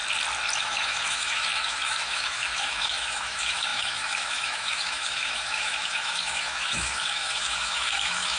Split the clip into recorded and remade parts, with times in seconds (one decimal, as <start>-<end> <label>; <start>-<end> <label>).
0.0-0.6 recorded; 0.6-8.4 remade